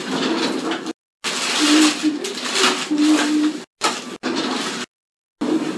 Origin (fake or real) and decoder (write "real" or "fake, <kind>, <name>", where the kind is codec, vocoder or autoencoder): real